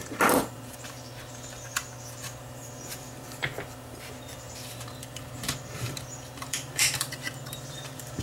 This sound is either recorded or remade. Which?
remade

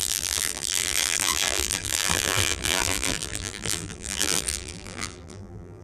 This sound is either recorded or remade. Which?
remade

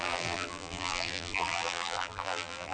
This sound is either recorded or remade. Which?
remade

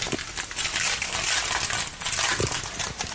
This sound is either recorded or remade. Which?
recorded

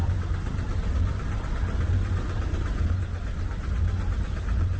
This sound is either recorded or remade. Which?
recorded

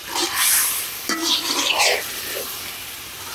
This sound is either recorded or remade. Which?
remade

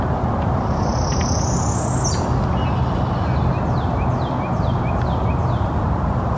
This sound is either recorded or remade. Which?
recorded